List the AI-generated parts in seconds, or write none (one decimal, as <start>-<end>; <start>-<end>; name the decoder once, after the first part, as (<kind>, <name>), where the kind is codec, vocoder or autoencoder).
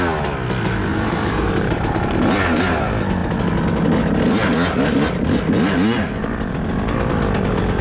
0.9-1.9 (vocoder, BigVGAN v2)